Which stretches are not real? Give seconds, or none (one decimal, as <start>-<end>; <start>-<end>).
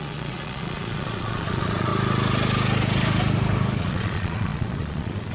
0.0-1.9; 3.8-5.3